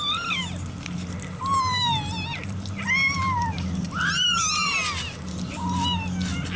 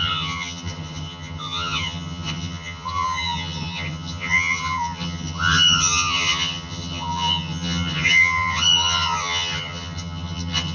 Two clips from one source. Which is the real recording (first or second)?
first